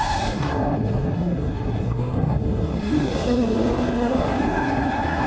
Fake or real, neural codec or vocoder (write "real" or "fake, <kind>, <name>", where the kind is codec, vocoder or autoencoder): fake, codec, SNAC